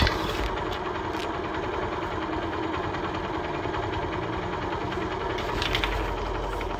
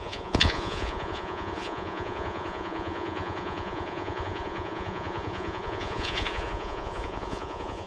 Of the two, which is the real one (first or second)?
first